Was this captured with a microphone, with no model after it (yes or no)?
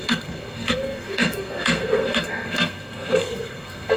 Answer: no